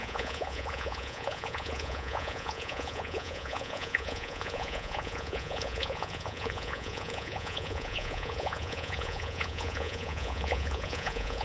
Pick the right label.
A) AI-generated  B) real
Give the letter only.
A